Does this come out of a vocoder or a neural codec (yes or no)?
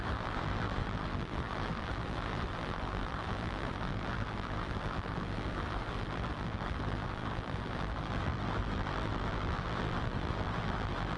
yes